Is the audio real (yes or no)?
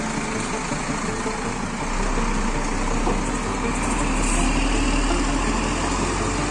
yes